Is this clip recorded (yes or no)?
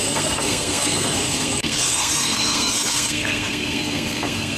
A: no